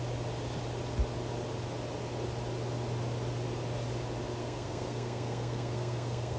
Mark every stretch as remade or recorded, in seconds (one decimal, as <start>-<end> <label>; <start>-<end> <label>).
0.0-4.4 recorded; 4.4-6.4 remade